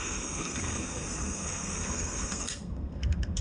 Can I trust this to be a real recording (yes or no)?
no